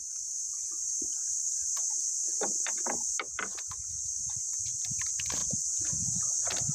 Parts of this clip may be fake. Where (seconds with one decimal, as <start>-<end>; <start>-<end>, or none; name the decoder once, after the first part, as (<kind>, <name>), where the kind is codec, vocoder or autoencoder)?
none

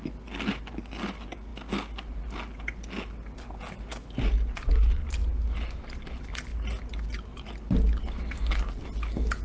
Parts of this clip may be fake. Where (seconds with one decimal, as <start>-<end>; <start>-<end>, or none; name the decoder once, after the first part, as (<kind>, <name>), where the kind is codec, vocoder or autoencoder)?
none

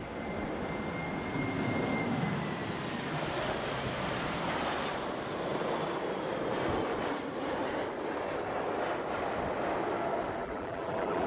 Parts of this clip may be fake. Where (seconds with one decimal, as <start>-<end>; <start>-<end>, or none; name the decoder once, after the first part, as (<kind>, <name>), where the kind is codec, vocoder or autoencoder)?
10.4-11.3 (vocoder, BigVGAN v2)

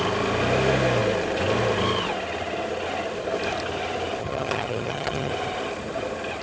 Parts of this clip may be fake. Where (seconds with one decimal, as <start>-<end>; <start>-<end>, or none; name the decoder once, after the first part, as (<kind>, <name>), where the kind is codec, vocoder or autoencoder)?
4.2-5.3 (vocoder, HiFi-GAN)

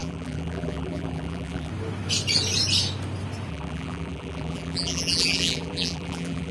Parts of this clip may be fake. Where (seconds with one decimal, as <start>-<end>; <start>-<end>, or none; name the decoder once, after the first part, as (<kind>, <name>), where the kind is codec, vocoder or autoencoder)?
0.0-1.7 (vocoder, BigVGAN v2); 3.5-6.5

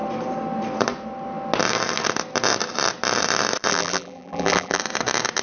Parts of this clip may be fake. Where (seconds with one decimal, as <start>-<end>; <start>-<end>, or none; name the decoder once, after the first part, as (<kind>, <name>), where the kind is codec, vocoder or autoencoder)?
3.7-4.8 (vocoder, BigVGAN v2)

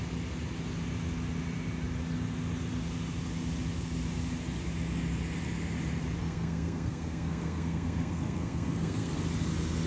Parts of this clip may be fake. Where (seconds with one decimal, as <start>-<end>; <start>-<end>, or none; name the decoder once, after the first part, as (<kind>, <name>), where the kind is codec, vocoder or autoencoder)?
6.2-9.2 (codec, SNAC)

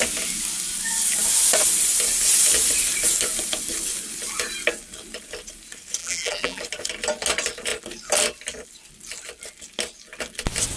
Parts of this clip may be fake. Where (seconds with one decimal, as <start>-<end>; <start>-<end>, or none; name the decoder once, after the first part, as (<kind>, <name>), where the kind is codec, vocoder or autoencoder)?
6.0-6.6 (vocoder, BigVGAN v2)